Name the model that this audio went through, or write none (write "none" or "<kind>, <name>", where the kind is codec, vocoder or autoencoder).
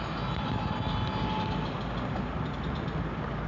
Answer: none